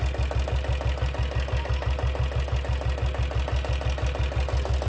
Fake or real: real